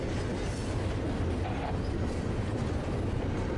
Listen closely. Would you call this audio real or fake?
real